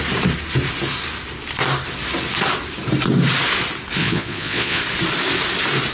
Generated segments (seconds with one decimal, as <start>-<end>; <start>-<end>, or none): 4.0-4.8